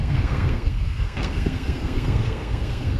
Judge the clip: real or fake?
fake